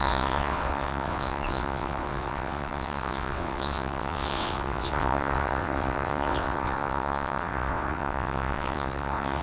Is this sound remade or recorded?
remade